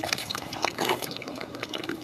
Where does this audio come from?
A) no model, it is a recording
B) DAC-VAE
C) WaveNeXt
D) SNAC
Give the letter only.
D